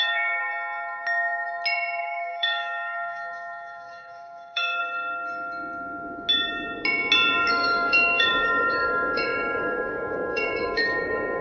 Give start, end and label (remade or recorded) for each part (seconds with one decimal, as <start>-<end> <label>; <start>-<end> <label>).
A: 0.0-0.5 remade; 0.5-2.0 recorded; 2.0-4.8 remade; 4.8-7.5 recorded; 7.5-11.4 remade